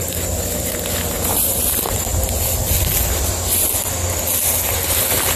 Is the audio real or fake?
real